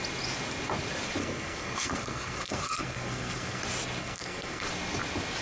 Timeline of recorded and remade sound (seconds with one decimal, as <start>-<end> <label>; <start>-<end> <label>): 0.0-1.2 recorded; 1.2-3.6 remade; 3.6-4.0 recorded; 4.0-4.7 remade; 4.7-5.4 recorded